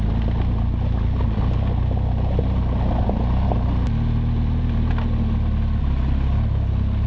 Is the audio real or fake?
real